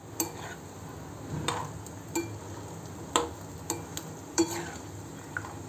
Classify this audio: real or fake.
real